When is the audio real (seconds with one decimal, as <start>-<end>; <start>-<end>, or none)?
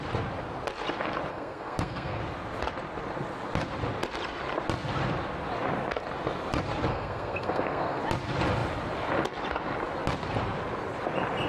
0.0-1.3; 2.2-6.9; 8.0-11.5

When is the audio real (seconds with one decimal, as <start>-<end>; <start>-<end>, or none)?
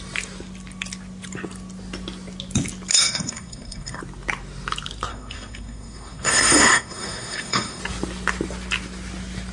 0.0-2.9; 4.0-5.1; 7.8-9.5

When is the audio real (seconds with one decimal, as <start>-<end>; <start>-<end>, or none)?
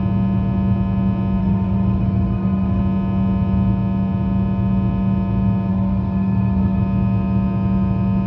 0.0-1.4; 2.8-5.7; 6.8-8.3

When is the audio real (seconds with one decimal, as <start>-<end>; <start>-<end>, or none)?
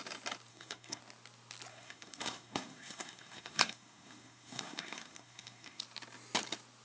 0.0-0.5; 1.0-1.7; 5.8-6.8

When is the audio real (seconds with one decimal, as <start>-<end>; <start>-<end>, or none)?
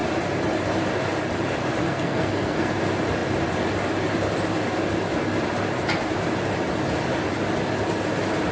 0.0-1.8; 2.8-8.5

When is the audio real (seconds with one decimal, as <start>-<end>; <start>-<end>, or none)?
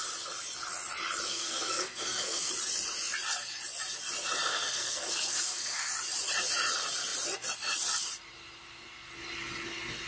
0.0-1.3; 2.5-4.5; 5.9-10.1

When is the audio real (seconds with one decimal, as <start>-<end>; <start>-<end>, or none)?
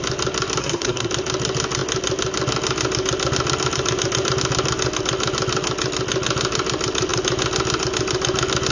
0.0-0.6; 1.1-8.7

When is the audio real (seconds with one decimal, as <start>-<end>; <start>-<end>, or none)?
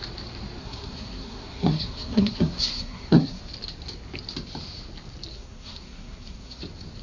0.0-0.6; 3.4-5.3; 6.6-7.0